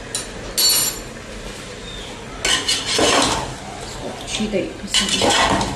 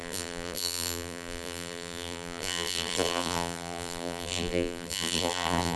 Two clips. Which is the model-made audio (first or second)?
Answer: second